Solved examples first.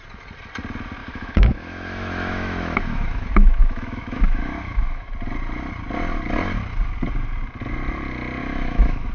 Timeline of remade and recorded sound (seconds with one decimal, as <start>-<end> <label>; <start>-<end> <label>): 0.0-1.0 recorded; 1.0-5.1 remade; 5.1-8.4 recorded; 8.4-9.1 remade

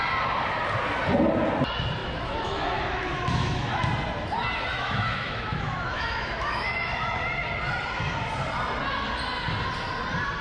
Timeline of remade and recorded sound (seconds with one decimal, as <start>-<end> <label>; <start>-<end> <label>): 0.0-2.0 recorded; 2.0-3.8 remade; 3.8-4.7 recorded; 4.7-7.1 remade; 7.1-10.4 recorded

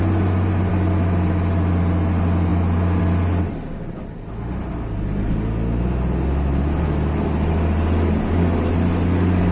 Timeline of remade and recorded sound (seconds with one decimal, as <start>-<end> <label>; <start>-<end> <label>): 0.0-9.5 recorded

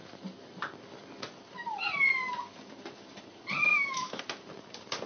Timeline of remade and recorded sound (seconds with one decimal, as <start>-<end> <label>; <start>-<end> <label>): 0.0-3.7 recorded; 3.7-4.2 remade; 4.2-5.1 recorded